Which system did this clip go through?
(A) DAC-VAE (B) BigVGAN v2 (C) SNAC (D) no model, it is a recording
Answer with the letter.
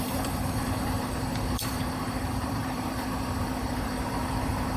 B